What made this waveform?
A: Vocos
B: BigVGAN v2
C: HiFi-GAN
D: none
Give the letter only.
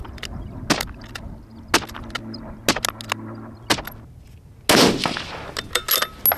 D